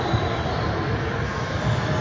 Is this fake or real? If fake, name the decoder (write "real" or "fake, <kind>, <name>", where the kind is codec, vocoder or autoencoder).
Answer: real